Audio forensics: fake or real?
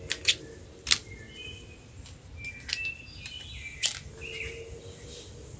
real